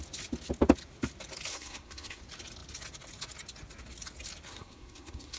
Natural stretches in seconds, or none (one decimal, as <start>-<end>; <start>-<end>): 0.0-1.5; 2.2-4.5